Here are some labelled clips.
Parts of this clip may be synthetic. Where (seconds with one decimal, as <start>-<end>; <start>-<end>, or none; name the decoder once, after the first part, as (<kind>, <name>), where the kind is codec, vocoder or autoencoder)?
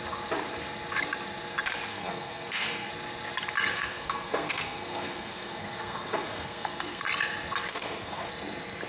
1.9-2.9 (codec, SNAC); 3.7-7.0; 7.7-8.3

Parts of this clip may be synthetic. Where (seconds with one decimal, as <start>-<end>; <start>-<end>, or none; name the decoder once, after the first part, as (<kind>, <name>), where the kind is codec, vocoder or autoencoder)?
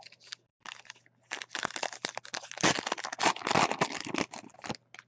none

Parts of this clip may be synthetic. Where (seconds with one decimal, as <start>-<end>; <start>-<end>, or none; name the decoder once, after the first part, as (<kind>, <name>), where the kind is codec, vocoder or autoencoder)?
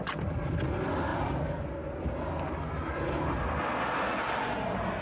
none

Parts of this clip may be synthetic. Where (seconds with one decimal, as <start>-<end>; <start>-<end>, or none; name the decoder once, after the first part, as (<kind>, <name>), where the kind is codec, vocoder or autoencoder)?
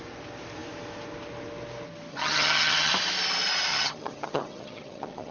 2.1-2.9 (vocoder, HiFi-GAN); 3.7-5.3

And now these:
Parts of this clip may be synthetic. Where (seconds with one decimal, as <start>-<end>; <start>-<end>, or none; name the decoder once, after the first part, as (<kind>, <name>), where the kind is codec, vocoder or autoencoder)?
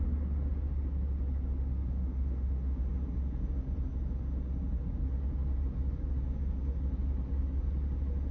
1.8-2.8 (autoencoder, DAC-VAE)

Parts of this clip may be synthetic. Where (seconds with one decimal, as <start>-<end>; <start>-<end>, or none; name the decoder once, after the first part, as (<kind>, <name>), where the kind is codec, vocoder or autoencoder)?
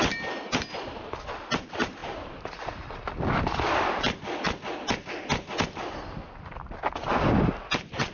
none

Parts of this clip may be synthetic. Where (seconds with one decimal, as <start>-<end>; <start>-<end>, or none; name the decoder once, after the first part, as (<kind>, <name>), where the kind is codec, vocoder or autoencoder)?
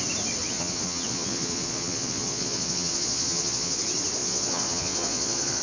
0.4-3.8 (vocoder, Vocos); 4.2-5.6